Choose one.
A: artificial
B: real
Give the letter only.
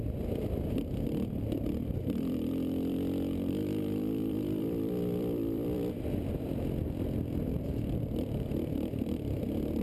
A